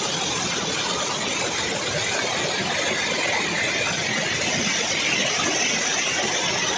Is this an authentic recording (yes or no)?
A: yes